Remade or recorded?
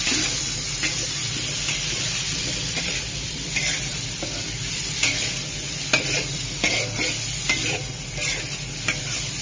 remade